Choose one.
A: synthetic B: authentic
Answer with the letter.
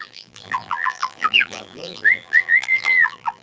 A